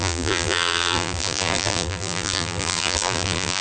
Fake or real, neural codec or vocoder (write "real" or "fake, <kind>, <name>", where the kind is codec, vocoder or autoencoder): fake, vocoder, BigVGAN v2